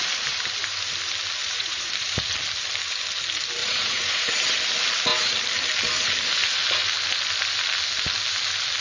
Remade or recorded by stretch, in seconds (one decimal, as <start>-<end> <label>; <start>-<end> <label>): 0.0-1.4 recorded; 1.4-1.9 remade; 1.9-3.6 recorded; 3.6-4.3 remade; 4.3-8.8 recorded